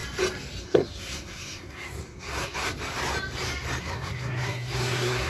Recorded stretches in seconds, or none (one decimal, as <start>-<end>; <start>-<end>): 0.0-0.6; 2.6-3.8